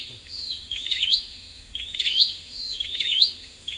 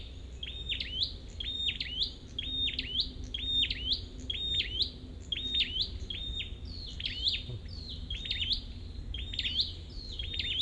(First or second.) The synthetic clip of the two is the first